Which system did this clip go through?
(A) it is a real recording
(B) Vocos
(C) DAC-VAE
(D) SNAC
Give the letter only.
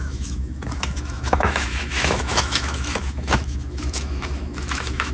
C